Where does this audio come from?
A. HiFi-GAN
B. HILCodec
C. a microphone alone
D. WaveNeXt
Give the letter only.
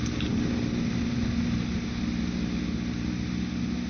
C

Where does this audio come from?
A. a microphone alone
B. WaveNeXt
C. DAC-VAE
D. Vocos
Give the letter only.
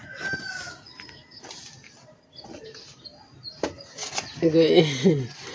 A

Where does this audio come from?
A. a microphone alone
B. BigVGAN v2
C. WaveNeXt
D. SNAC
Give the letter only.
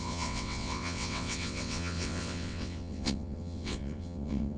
C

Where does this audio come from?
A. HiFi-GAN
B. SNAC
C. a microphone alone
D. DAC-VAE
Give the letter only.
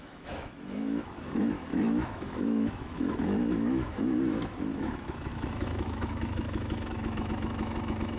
D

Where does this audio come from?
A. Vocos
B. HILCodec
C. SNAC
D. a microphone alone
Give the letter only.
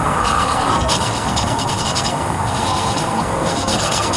C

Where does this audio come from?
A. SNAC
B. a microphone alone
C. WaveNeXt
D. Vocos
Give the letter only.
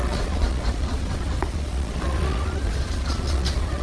D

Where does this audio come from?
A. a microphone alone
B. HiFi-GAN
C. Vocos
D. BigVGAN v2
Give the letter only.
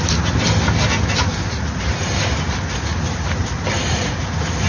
A